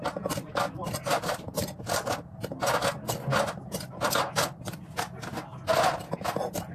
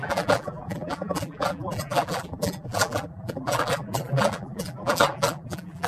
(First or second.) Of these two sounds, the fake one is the second